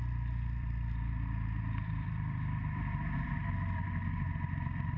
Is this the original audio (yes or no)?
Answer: no